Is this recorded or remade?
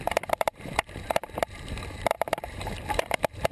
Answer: remade